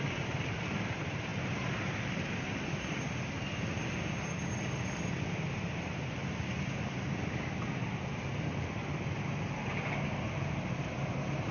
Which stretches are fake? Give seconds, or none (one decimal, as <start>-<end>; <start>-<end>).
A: none